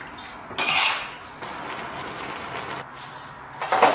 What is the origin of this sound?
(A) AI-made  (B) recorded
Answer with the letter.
B